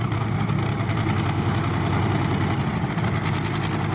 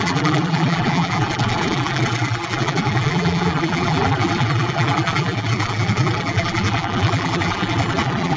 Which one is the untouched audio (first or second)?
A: first